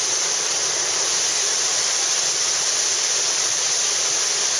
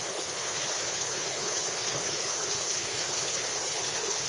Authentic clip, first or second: first